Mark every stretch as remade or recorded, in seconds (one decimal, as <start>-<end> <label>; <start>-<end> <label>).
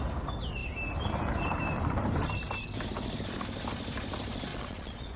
0.0-4.5 recorded; 4.5-5.2 remade